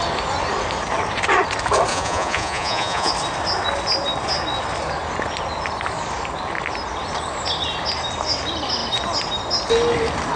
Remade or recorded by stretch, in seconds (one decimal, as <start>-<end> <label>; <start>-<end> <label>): 0.0-1.9 recorded; 1.9-3.1 remade; 3.1-10.4 recorded